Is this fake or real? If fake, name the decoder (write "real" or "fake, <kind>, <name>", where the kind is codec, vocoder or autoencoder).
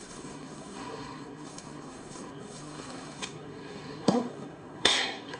fake, codec, SNAC